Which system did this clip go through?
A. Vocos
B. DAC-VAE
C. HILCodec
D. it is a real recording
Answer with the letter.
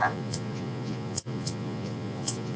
A